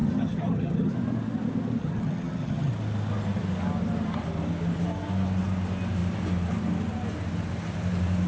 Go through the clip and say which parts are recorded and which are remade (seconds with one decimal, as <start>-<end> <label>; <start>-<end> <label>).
0.0-0.9 remade; 0.9-1.8 recorded; 1.8-2.7 remade; 2.7-8.3 recorded